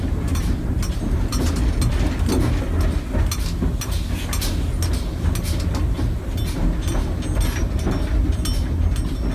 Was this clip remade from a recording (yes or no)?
no